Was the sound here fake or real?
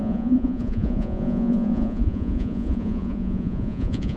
fake